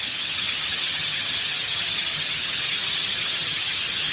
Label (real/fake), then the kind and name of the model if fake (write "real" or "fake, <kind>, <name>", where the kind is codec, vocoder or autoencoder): fake, vocoder, HiFi-GAN